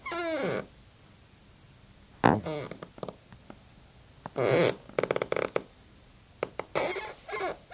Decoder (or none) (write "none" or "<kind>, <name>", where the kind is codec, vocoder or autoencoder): none